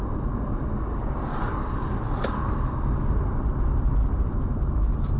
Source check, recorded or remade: recorded